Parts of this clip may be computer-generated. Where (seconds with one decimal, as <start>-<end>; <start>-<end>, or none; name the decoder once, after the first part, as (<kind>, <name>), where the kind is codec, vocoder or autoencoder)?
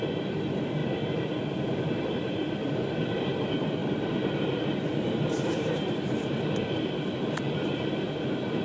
none